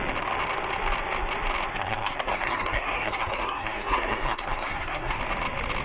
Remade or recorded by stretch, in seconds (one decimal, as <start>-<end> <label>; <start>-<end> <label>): 0.0-1.7 recorded; 1.7-5.2 remade; 5.2-5.8 recorded